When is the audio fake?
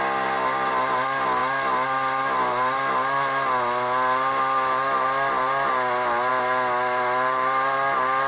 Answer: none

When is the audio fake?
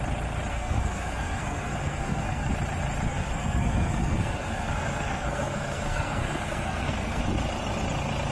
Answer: 0.5-2.5 (codec, SNAC); 3.1-7.2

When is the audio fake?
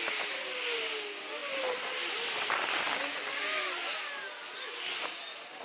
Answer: none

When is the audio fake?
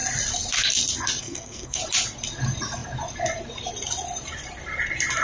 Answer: 1.2-1.8 (codec, SNAC)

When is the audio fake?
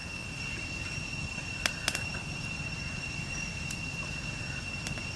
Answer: none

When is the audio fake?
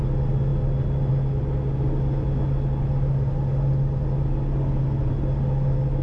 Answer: none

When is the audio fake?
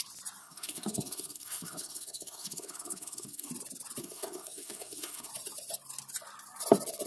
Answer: 0.4-3.5 (codec, SNAC); 4.0-5.3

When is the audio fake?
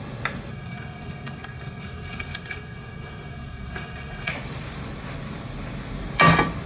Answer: 0.5-4.3 (codec, SNAC)